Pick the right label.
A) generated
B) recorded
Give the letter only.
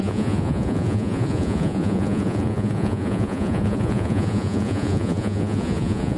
A